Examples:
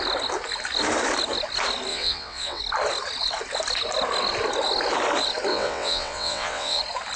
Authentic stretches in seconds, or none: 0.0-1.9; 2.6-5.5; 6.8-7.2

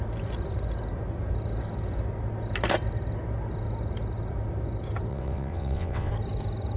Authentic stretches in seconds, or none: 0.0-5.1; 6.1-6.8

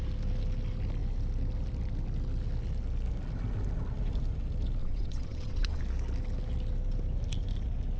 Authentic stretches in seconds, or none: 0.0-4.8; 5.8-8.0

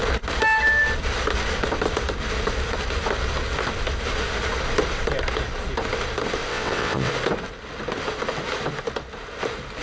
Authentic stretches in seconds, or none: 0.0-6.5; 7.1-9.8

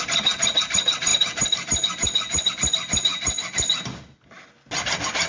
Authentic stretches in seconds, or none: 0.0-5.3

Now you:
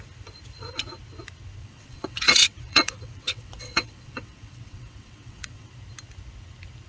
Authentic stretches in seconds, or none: 0.0-1.6; 5.7-6.9